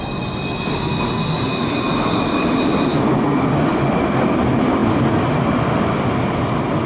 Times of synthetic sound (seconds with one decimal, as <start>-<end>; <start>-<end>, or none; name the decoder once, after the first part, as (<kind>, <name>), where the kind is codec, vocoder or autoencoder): 1.9-2.5 (codec, DAC); 2.9-3.8